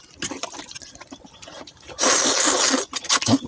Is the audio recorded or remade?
recorded